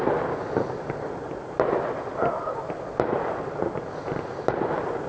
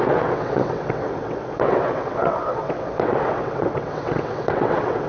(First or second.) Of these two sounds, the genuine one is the first